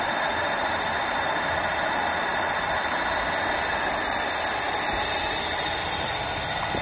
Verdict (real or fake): fake